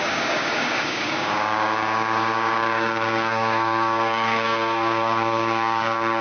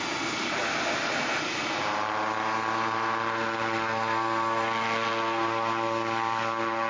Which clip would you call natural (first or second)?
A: second